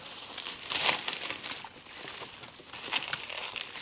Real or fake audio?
real